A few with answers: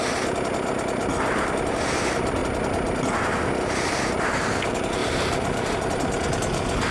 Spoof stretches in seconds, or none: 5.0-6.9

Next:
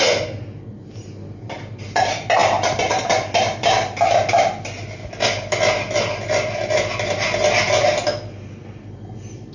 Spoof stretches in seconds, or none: none